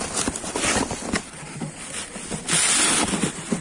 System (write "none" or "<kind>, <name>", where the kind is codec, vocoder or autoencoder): none